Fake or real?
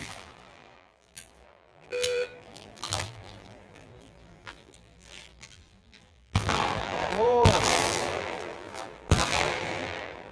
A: fake